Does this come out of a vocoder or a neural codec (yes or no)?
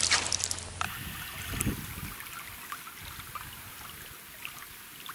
no